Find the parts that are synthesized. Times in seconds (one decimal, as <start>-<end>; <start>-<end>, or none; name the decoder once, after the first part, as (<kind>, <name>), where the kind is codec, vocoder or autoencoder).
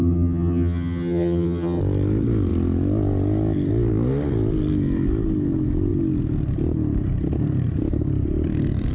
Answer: 0.0-1.8 (vocoder, HiFi-GAN)